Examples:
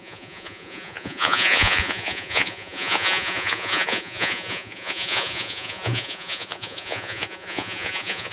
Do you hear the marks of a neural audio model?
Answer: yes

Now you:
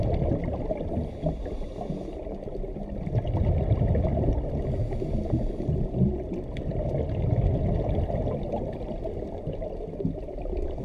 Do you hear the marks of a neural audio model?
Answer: no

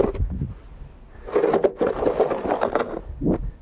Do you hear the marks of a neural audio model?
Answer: no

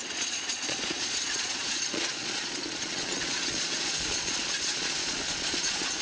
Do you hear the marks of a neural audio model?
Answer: yes